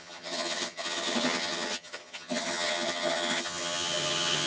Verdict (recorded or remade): remade